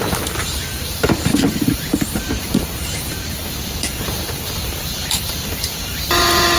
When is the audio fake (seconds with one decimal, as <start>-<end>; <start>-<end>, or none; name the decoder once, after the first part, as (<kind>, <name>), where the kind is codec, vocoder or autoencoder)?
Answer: 0.7-3.2 (vocoder, BigVGAN v2); 3.9-6.6